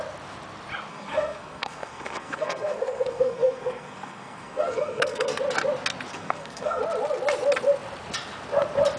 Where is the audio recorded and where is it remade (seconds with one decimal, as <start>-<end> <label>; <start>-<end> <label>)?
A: 0.0-0.9 recorded; 0.9-5.4 remade; 5.4-6.1 recorded; 6.1-6.8 remade; 6.8-9.0 recorded